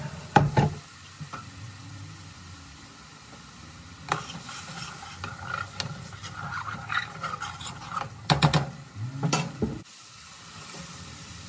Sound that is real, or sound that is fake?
real